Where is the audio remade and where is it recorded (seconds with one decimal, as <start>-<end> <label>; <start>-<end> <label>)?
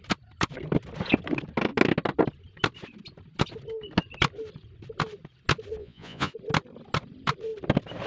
0.0-5.8 recorded; 5.8-6.3 remade; 6.3-8.1 recorded